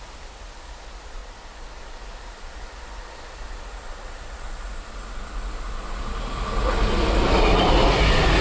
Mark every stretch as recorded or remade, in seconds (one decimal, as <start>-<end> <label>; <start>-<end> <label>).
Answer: 0.0-8.4 recorded